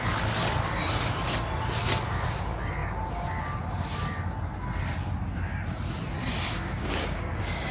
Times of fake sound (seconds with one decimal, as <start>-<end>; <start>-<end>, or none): 6.2-7.7